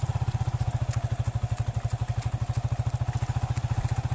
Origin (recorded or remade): recorded